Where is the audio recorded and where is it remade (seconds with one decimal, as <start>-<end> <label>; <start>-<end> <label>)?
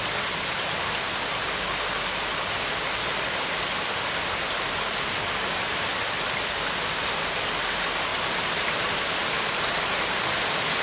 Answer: 0.0-10.8 recorded